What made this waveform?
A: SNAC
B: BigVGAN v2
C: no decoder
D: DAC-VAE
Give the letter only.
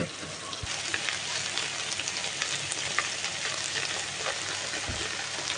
C